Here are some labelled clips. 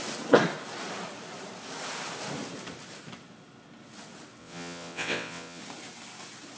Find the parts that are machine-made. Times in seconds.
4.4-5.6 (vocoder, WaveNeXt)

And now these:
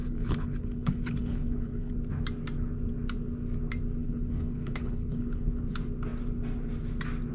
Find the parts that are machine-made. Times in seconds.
0.0-1.9 (codec, HILCodec); 4.0-5.5

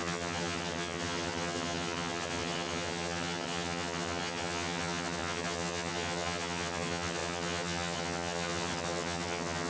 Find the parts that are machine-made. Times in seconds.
0.0-9.7 (vocoder, HiFi-GAN)

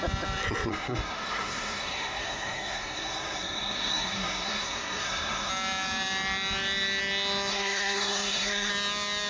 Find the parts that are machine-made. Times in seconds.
0.7-5.5 (codec, SNAC); 7.5-8.7